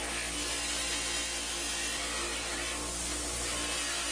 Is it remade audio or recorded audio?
recorded